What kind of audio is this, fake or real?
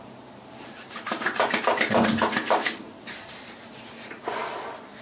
real